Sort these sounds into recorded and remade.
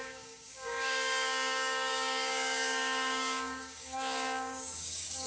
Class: remade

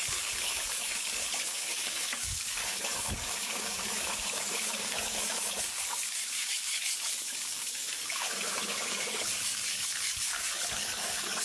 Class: remade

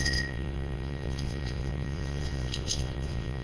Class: remade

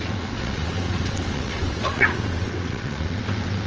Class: remade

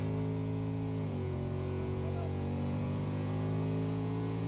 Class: remade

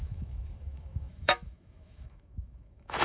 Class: remade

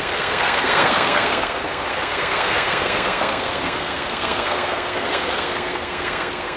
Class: remade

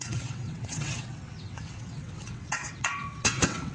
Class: remade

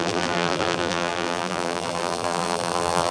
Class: remade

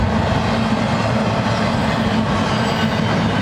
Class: recorded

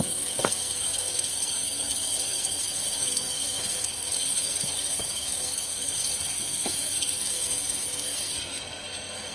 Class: remade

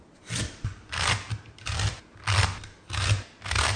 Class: recorded